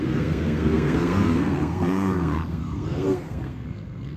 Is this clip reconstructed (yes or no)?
yes